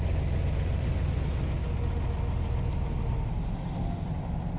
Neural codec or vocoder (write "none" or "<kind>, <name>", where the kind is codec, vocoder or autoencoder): none